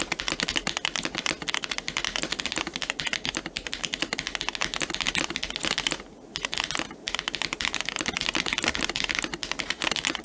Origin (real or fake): real